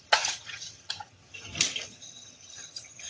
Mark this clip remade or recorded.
remade